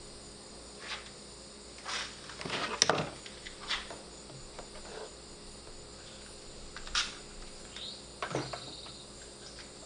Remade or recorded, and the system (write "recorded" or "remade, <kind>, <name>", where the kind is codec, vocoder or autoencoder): recorded